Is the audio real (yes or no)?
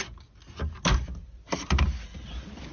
yes